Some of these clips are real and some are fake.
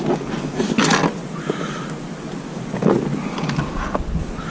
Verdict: real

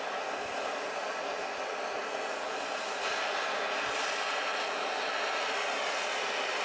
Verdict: real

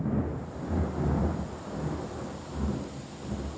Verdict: real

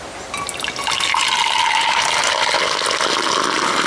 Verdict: real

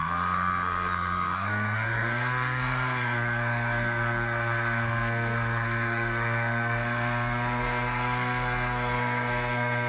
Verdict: fake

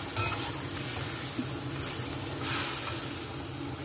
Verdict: real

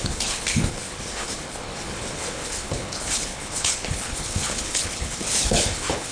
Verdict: fake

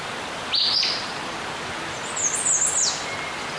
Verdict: real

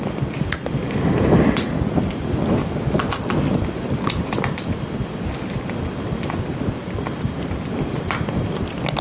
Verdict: real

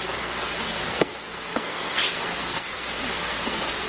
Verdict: fake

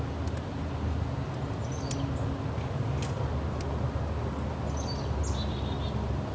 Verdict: real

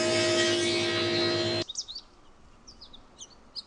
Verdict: real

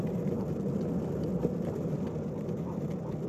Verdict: real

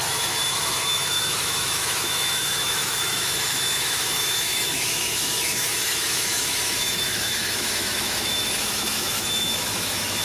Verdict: fake